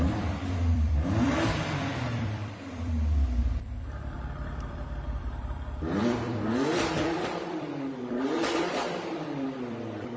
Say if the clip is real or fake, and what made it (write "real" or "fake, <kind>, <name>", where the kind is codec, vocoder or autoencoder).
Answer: fake, vocoder, BigVGAN v2